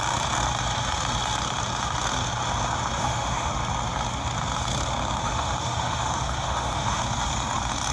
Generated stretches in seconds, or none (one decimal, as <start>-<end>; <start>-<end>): 3.0-3.5; 5.2-7.0